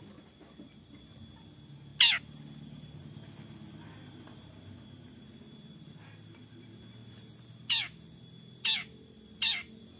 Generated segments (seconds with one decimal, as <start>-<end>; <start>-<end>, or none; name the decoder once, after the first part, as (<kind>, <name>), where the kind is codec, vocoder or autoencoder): none